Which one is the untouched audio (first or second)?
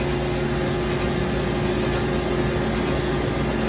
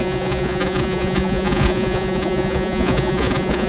first